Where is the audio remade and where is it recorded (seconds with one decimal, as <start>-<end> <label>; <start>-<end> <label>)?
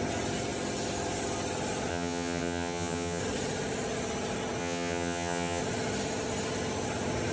0.0-1.9 recorded; 1.9-3.2 remade; 3.2-4.6 recorded; 4.6-5.6 remade; 5.6-7.3 recorded